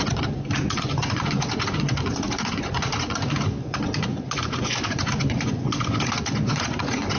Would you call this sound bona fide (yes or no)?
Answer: no